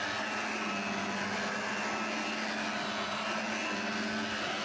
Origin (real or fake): real